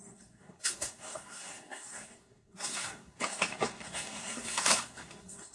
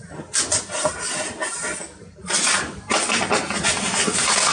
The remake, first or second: first